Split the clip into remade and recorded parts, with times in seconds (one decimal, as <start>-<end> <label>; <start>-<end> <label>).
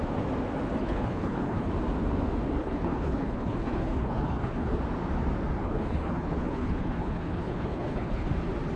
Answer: 0.0-0.8 recorded; 0.8-1.7 remade; 1.7-2.6 recorded; 2.6-4.8 remade; 4.8-5.6 recorded; 5.6-8.3 remade; 8.3-8.8 recorded